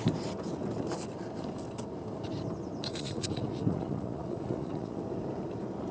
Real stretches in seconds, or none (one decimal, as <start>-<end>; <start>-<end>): 0.0-2.9; 5.0-5.9